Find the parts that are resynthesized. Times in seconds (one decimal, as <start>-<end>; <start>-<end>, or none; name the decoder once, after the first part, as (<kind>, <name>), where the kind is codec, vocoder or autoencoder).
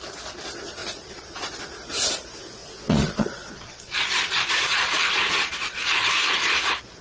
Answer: 0.8-1.5 (vocoder, Vocos); 2.6-6.1